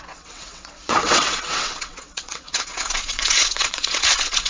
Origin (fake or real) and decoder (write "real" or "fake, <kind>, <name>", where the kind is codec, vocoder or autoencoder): fake, vocoder, WaveNeXt